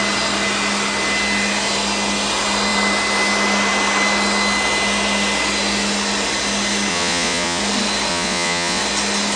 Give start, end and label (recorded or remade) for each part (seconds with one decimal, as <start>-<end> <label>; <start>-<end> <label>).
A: 0.0-6.9 recorded; 6.9-7.6 remade; 7.6-8.1 recorded; 8.1-8.8 remade; 8.8-9.4 recorded